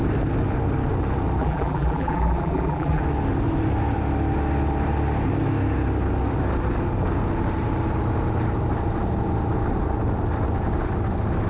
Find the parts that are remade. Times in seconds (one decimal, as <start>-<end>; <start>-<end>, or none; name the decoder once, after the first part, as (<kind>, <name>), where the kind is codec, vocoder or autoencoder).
1.4-3.0 (vocoder, BigVGAN v2)